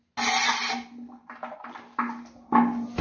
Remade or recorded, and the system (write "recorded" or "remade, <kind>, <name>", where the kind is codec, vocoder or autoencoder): recorded